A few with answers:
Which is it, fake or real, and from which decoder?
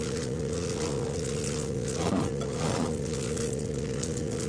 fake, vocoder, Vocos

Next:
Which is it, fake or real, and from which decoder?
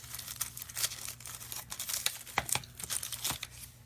real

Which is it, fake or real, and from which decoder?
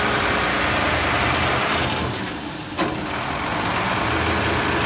real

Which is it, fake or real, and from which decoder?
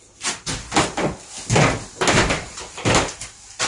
real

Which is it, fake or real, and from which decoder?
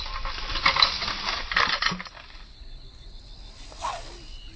real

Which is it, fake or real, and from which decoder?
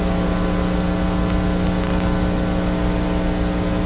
real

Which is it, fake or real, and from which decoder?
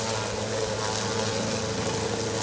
real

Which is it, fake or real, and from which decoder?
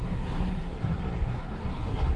fake, codec, SNAC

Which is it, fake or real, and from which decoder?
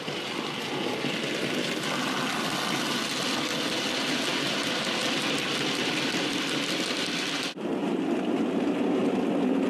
real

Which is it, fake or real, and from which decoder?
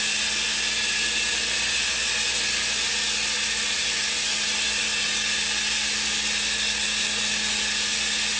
real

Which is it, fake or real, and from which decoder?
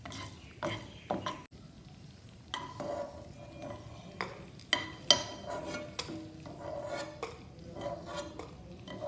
real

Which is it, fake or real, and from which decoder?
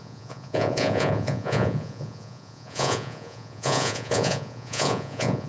fake, vocoder, Vocos